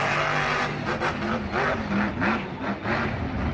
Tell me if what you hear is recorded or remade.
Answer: recorded